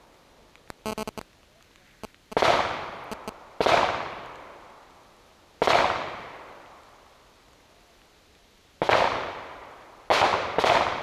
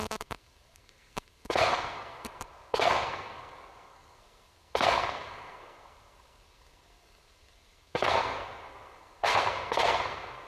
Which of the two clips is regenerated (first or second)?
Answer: second